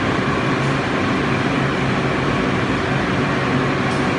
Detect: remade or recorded recorded